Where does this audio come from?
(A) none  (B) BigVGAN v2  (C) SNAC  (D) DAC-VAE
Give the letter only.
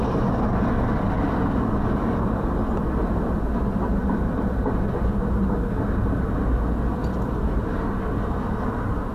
A